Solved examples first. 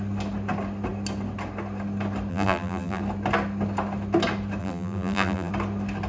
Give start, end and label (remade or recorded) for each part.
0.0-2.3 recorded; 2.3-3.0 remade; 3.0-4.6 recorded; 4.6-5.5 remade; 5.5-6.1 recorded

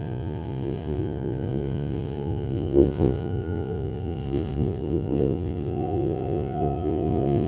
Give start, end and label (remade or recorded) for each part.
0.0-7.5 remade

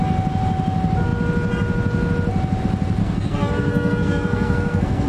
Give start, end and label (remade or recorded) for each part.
0.0-3.0 recorded; 3.0-5.1 remade

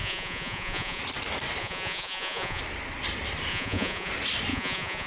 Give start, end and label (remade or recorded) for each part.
0.0-1.0 remade; 1.0-1.6 recorded; 1.6-2.6 remade; 2.6-3.5 recorded; 3.5-4.1 remade; 4.1-4.5 recorded; 4.5-5.1 remade

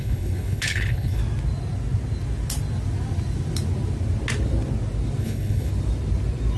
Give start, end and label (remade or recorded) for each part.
0.0-1.2 remade; 1.2-5.2 recorded; 5.2-5.7 remade; 5.7-6.6 recorded